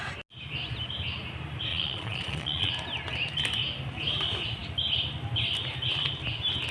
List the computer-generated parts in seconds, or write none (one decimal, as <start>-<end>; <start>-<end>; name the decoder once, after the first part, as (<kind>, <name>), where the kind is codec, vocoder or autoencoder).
1.7-2.7 (vocoder, Vocos)